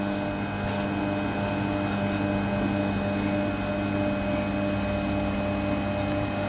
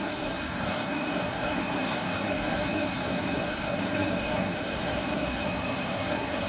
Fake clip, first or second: second